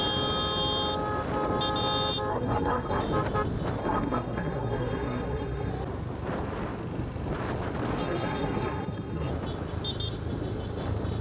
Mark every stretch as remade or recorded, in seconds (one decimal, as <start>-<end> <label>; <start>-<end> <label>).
0.0-2.3 recorded; 2.3-3.0 remade; 3.0-3.8 recorded; 3.8-5.7 remade; 5.7-8.0 recorded; 8.0-9.3 remade; 9.3-11.2 recorded